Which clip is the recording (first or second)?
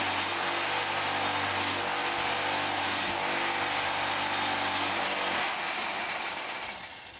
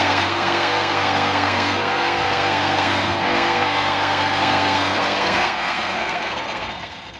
first